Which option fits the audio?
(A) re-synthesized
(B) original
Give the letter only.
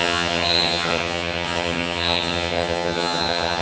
A